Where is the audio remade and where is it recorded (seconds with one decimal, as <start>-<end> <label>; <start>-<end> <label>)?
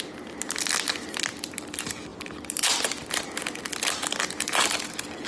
0.0-5.3 recorded